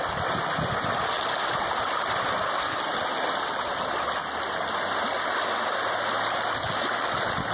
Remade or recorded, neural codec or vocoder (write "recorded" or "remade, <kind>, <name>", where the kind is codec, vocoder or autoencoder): recorded